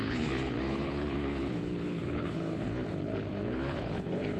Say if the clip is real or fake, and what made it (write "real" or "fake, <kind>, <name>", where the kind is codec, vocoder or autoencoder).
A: fake, codec, HILCodec